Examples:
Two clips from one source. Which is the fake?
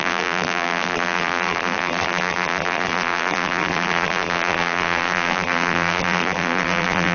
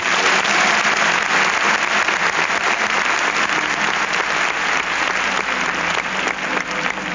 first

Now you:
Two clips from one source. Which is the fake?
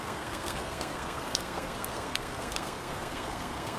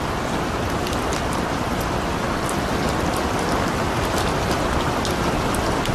first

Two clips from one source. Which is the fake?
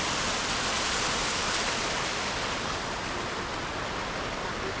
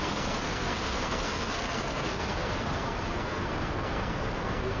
second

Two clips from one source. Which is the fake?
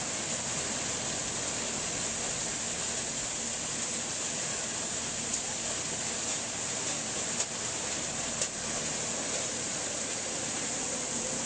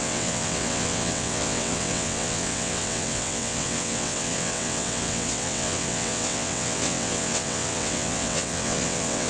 second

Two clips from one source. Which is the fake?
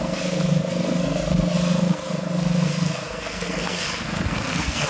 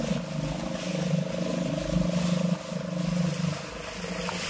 first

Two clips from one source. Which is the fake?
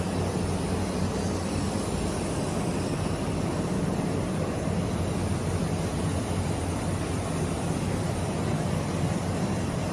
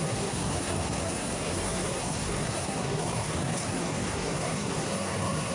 second